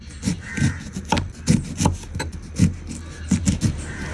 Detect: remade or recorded recorded